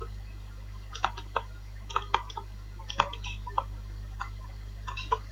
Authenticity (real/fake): fake